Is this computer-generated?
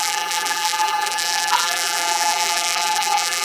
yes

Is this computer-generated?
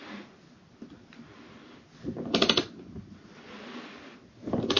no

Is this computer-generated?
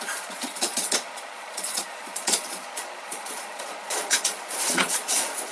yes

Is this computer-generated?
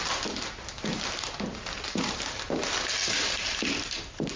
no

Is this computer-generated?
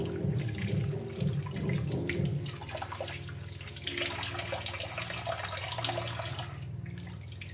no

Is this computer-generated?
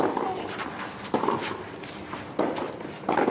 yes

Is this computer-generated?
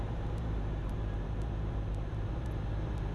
yes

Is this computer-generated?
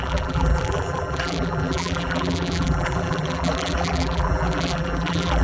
yes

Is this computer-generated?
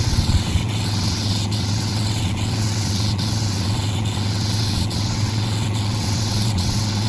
yes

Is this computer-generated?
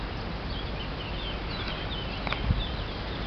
no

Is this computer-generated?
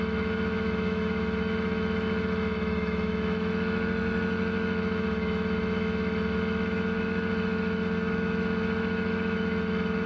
yes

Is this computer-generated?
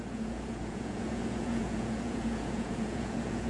yes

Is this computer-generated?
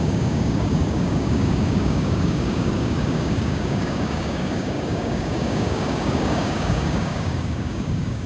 yes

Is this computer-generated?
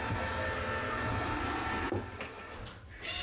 no